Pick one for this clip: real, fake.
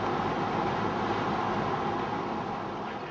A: real